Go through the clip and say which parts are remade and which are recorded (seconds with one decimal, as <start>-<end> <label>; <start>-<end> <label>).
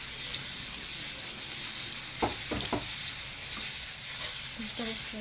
0.0-5.2 recorded